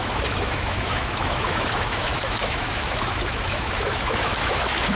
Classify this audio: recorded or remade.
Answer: remade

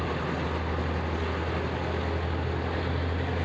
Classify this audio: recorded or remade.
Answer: recorded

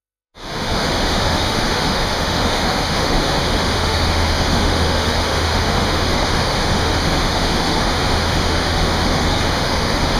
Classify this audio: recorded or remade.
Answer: remade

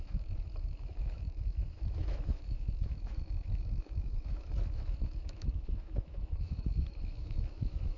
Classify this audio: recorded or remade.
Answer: remade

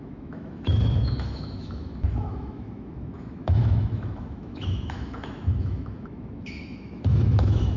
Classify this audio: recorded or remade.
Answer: remade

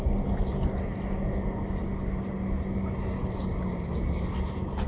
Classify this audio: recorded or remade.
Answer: recorded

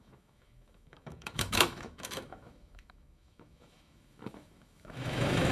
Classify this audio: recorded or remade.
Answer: remade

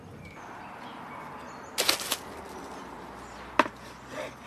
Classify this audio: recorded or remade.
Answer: recorded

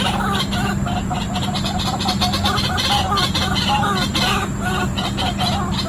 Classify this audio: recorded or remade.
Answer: recorded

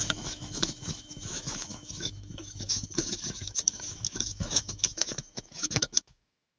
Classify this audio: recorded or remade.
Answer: remade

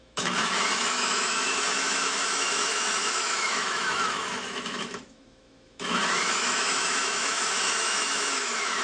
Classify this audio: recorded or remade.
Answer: remade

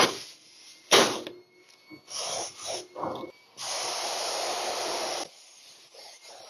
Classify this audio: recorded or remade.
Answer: recorded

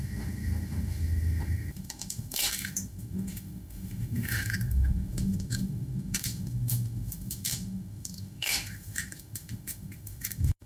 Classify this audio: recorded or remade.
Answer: remade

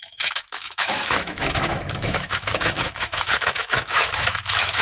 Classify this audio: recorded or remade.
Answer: remade